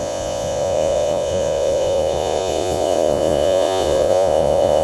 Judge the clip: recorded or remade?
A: remade